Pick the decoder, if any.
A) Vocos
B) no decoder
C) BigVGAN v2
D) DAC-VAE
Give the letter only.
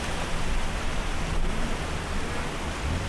B